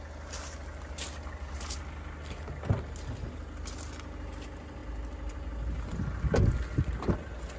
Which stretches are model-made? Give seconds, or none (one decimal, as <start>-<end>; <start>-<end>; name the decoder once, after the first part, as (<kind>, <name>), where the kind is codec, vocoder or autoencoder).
none